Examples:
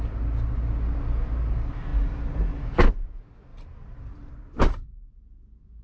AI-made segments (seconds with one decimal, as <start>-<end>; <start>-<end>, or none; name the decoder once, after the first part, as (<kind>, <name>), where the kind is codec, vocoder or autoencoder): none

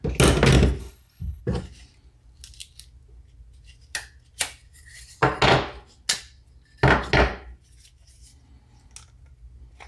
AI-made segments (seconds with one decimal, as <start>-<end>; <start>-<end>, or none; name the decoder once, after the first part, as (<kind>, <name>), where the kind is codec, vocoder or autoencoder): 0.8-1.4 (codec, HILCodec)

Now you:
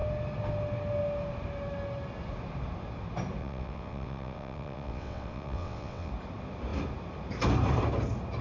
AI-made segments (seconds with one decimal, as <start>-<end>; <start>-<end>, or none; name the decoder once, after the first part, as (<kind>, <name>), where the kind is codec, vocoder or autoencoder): 3.4-6.1 (vocoder, WaveNeXt)